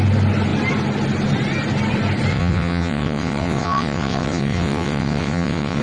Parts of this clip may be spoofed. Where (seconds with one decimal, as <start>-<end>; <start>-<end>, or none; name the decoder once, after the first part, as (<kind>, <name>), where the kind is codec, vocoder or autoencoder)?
2.3-5.8 (vocoder, WaveNeXt)